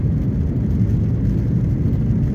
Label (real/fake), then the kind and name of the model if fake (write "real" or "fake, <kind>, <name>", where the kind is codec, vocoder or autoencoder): real